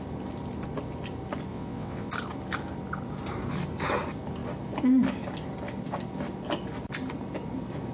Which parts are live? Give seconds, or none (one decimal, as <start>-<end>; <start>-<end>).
0.0-1.5; 2.1-7.9